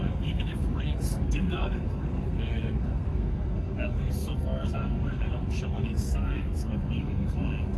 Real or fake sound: fake